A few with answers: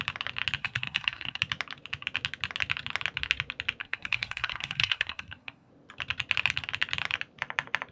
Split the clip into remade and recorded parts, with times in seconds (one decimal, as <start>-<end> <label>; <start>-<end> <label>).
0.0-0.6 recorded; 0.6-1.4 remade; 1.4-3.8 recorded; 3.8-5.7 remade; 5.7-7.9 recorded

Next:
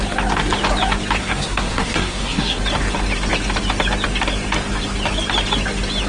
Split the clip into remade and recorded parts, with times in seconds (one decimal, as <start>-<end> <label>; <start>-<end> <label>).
0.0-1.2 recorded; 1.2-2.6 remade; 2.6-6.1 recorded

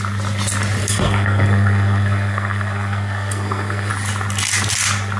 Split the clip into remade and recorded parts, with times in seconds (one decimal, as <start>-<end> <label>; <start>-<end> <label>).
0.0-0.8 recorded; 0.8-3.9 remade; 3.9-5.2 recorded

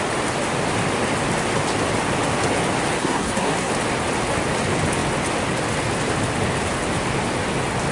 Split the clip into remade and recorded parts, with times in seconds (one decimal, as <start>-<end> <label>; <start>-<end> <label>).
0.0-3.0 recorded; 3.0-3.7 remade; 3.7-7.9 recorded

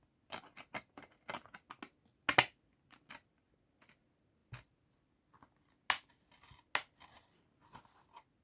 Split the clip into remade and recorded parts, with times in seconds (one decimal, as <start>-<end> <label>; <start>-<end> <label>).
0.0-8.4 recorded

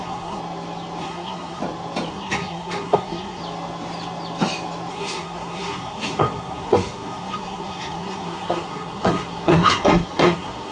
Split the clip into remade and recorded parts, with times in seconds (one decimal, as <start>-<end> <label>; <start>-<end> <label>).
0.0-0.4 remade; 0.4-1.0 recorded; 1.0-1.6 remade; 1.6-2.1 recorded; 2.1-3.4 remade; 3.4-4.9 recorded; 4.9-10.7 remade

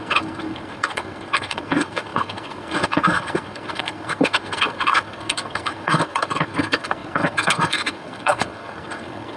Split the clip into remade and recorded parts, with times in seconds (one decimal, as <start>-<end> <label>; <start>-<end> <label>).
0.0-9.4 remade